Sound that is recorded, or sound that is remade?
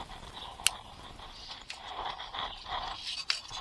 recorded